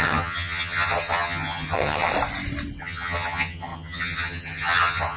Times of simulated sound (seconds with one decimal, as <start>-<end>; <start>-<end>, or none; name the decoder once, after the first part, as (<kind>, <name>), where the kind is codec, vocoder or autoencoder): 0.0-2.1 (vocoder, HiFi-GAN); 2.8-5.2